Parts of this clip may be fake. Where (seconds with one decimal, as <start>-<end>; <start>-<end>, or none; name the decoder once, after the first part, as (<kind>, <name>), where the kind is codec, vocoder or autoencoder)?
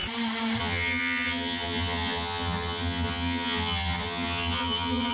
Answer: 0.6-5.1 (vocoder, HiFi-GAN)